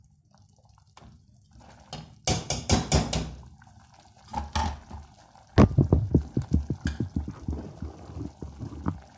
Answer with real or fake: real